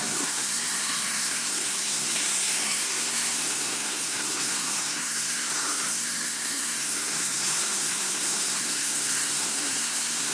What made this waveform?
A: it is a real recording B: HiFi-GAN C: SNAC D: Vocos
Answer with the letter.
C